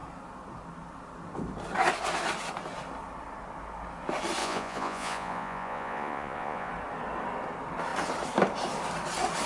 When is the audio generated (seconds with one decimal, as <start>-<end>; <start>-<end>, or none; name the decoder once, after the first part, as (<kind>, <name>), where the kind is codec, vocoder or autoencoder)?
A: 4.4-6.7 (vocoder, Vocos)